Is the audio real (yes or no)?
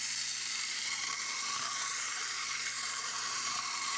no